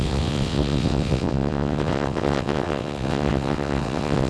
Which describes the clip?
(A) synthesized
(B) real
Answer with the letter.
A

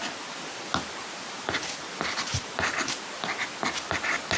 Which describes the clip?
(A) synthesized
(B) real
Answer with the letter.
B